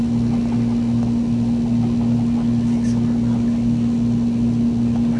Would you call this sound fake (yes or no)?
no